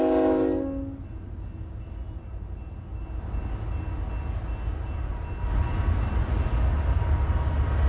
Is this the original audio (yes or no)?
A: yes